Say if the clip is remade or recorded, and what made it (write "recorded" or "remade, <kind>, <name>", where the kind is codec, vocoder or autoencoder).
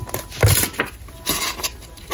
recorded